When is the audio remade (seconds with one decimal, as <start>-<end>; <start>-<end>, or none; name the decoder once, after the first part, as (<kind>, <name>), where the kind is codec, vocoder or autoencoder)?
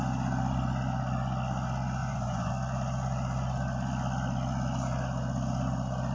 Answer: 2.0-2.5 (vocoder, Vocos)